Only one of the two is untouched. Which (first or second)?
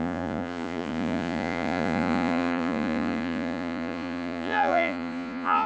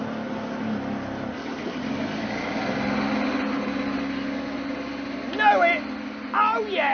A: second